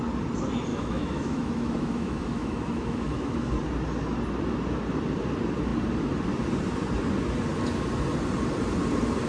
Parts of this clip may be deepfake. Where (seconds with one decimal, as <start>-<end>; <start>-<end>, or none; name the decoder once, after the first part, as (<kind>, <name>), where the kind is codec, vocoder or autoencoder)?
0.7-3.5 (autoencoder, DAC-VAE)